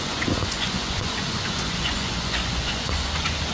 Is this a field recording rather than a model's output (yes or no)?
no